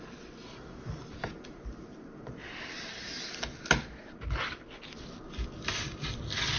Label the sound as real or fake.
real